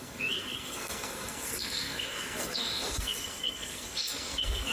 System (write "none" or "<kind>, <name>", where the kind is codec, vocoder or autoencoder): codec, SNAC